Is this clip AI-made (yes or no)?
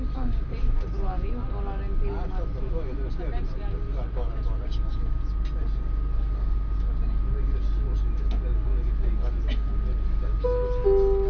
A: no